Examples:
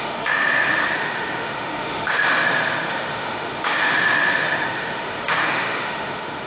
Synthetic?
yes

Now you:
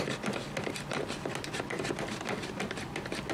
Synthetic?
no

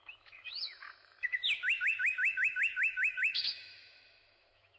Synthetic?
yes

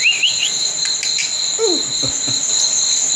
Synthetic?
no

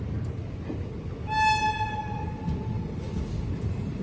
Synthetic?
no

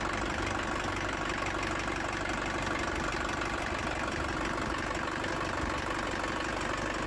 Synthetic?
no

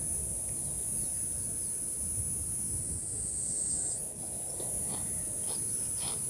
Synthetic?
no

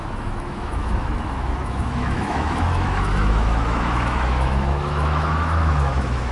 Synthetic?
yes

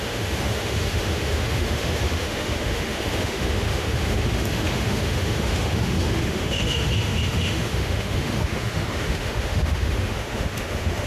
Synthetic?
yes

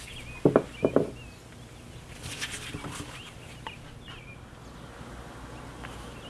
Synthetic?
no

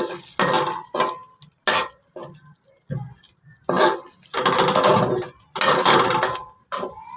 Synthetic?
no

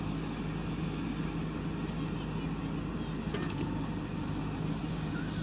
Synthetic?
no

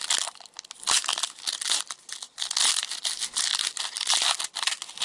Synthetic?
no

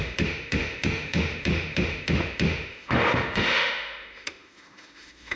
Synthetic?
yes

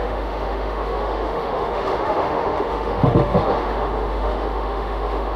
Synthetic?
yes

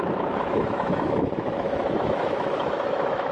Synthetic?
yes